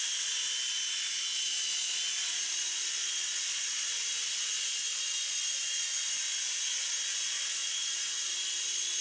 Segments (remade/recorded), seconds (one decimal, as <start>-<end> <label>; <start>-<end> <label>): 0.0-7.6 recorded; 7.6-8.3 remade; 8.3-9.0 recorded

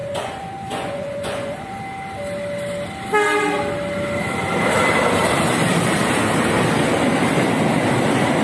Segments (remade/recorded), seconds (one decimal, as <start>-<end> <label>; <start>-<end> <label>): 0.0-1.8 remade; 1.8-8.4 recorded

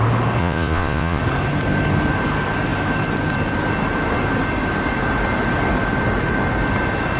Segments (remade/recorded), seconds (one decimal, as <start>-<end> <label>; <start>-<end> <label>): 0.0-0.4 recorded; 0.4-1.2 remade; 1.2-7.2 recorded

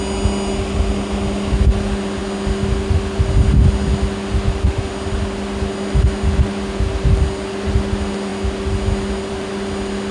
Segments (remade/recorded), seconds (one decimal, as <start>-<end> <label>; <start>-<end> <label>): 0.0-10.1 recorded

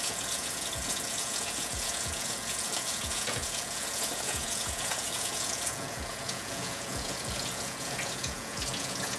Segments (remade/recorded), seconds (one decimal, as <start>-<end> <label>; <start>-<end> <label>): 0.0-9.2 remade

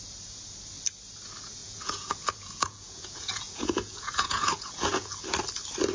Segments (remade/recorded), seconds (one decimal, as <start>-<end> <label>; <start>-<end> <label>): 0.0-1.6 recorded; 1.6-5.1 remade; 5.1-5.9 recorded